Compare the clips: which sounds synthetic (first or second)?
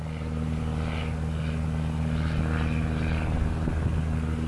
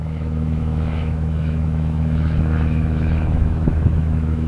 second